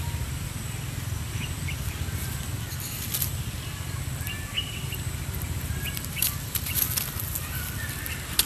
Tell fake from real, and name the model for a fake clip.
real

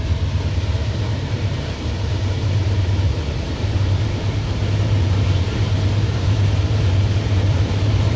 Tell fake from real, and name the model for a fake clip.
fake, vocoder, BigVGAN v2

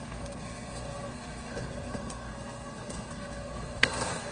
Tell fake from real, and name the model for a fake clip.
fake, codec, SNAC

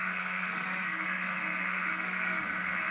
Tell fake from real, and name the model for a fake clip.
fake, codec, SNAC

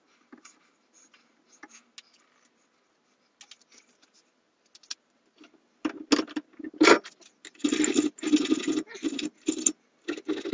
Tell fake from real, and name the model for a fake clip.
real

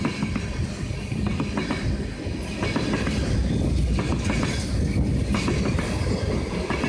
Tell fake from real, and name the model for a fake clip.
real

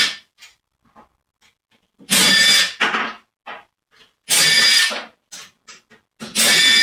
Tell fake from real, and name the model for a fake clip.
real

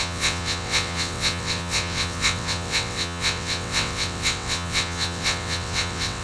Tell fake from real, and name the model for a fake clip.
fake, vocoder, WaveNeXt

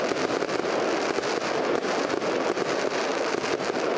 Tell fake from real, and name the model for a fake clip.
real